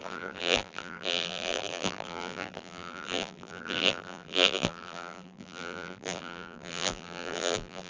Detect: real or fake fake